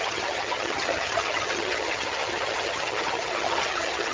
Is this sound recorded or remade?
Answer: remade